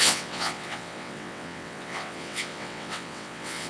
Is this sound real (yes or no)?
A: no